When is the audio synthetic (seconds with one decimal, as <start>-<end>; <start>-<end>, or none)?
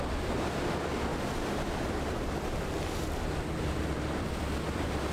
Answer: none